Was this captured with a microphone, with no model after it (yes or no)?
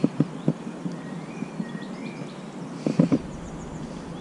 yes